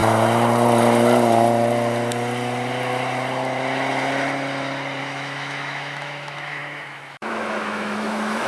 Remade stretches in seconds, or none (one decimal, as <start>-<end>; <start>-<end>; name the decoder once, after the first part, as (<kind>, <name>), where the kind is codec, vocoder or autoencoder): 5.0-8.5 (autoencoder, DAC-VAE)